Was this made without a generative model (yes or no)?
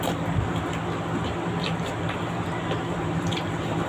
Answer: yes